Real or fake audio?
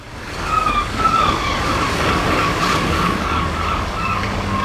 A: fake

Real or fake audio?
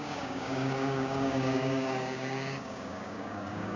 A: fake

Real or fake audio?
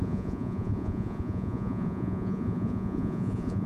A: fake